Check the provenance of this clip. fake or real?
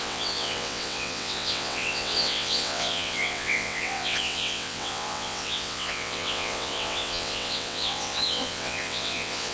fake